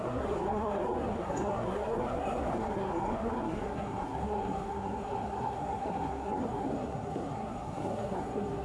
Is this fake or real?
fake